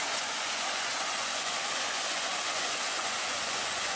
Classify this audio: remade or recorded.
remade